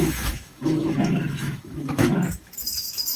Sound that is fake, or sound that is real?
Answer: fake